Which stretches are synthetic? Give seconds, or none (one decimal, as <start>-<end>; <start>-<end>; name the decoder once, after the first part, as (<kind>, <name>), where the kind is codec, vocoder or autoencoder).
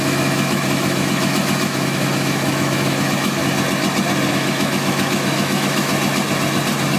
0.0-3.4 (autoencoder, DAC-VAE); 4.3-5.9